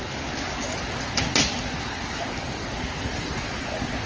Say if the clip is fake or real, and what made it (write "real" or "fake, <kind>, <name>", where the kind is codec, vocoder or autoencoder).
real